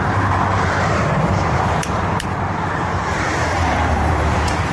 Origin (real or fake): fake